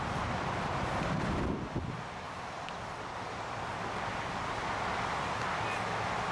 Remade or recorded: recorded